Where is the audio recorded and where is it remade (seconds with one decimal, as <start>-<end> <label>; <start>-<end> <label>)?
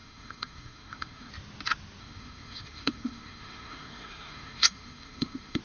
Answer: 0.0-1.3 remade; 1.3-2.0 recorded; 2.0-5.6 remade